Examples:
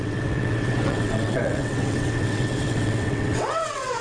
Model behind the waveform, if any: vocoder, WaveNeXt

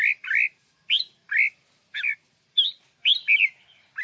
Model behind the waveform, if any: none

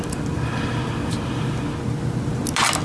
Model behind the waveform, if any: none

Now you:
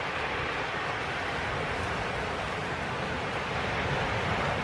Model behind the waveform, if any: none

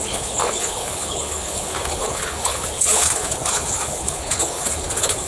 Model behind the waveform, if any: codec, HILCodec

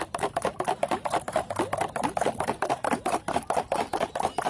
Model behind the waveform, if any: none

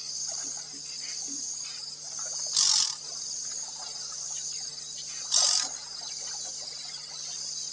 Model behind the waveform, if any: none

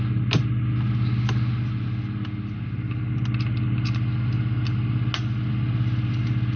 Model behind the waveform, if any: none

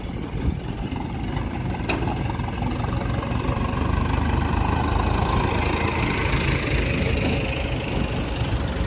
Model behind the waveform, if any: none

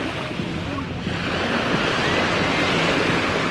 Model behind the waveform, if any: none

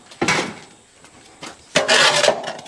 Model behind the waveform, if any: none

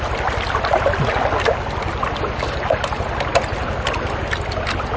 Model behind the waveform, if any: none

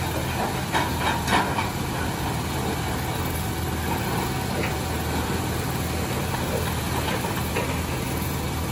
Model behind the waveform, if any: none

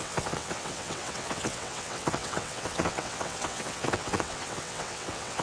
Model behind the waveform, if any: vocoder, WaveNeXt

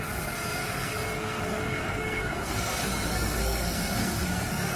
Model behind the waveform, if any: codec, SNAC